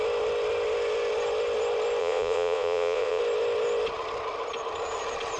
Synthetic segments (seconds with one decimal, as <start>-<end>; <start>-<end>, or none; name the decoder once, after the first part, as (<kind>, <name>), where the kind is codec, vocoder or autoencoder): 2.0-3.2 (vocoder, Vocos)